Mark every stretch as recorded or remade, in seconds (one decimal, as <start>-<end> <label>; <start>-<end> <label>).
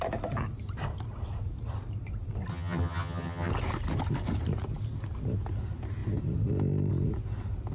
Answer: 0.0-2.5 recorded; 2.5-3.5 remade; 3.5-7.7 recorded